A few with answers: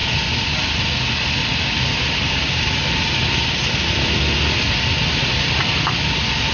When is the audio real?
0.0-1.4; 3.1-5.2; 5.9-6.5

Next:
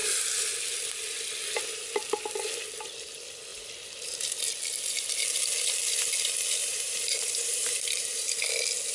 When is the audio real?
0.0-6.6; 8.3-8.9